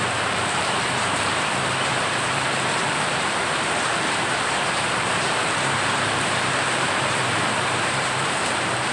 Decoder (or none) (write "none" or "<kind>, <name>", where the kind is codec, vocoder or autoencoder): vocoder, BigVGAN v2